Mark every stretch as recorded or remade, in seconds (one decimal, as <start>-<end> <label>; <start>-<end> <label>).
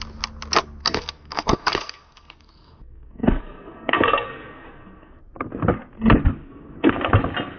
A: 0.0-0.8 recorded; 0.8-5.2 remade; 5.2-6.4 recorded; 6.4-6.9 remade; 6.9-7.6 recorded